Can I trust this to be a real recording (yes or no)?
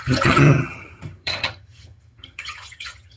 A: no